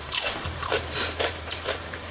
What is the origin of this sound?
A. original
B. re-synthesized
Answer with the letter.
B